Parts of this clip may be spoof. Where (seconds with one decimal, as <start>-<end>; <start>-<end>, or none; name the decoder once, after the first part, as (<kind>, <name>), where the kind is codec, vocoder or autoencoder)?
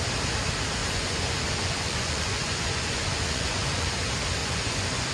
0.8-3.9 (vocoder, Vocos); 4.4-5.1